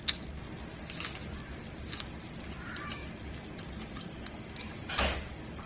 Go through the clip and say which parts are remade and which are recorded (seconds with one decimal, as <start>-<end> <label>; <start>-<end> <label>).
0.0-5.7 recorded